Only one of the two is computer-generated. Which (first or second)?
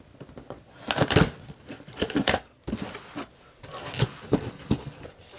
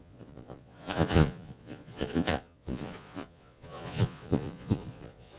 second